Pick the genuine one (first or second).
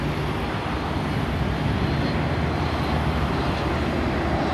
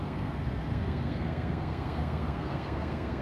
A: first